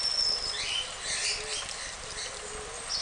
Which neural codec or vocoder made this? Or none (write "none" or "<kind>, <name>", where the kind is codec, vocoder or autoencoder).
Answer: none